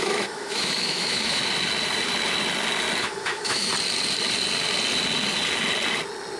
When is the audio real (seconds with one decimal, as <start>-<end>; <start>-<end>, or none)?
1.4-3.0; 3.7-6.4